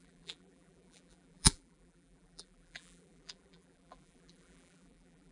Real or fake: fake